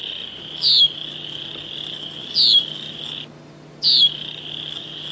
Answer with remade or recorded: recorded